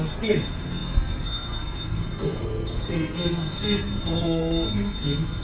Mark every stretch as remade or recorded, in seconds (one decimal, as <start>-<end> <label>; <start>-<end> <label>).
0.0-5.4 remade